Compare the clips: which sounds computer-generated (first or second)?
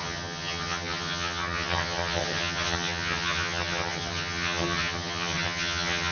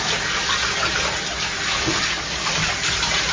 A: first